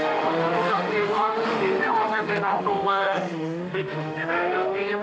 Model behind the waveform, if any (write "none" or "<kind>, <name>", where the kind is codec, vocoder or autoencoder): autoencoder, DAC-VAE